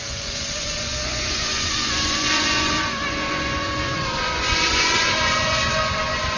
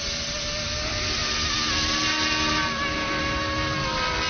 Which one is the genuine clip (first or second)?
second